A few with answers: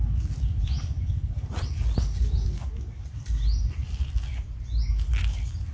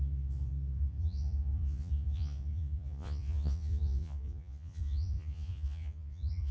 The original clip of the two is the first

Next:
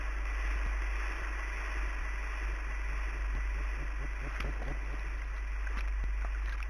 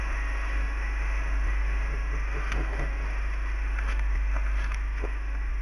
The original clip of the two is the first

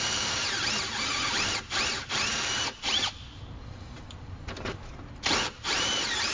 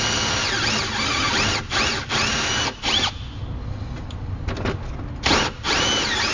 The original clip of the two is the second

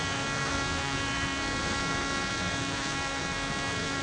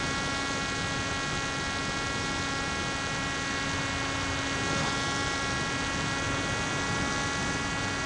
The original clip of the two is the second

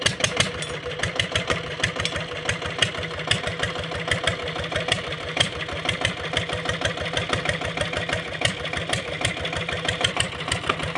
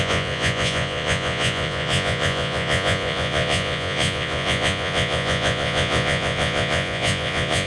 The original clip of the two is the first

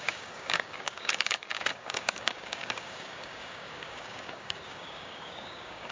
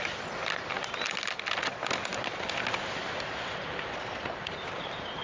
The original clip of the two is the second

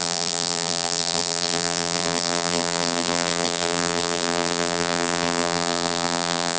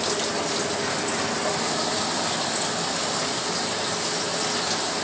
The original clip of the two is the second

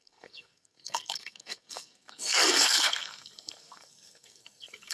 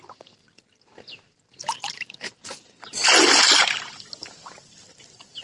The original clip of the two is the second